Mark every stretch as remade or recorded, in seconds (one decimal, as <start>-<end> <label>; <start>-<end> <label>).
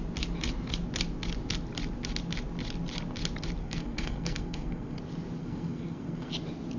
0.0-3.6 recorded; 3.6-5.0 remade; 5.0-5.4 recorded; 5.4-6.3 remade; 6.3-6.8 recorded